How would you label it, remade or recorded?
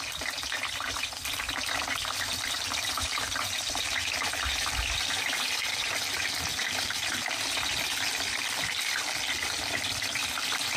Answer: recorded